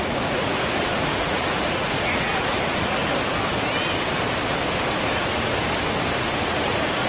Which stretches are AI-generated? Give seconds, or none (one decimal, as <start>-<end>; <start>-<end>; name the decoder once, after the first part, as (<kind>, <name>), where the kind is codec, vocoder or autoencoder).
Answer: 0.0-3.0 (vocoder, Vocos); 5.0-5.5; 6.2-7.1